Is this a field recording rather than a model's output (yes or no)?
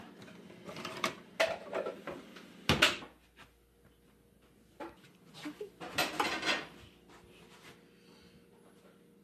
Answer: yes